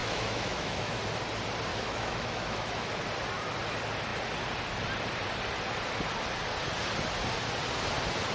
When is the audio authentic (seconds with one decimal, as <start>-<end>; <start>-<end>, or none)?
1.0-1.7; 3.0-8.3